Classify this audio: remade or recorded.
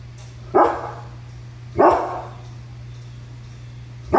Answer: recorded